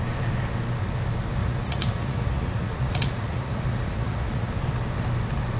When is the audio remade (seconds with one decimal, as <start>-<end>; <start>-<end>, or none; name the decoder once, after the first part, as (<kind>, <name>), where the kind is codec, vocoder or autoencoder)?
1.4-4.5 (vocoder, Vocos)